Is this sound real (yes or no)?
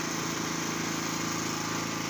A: yes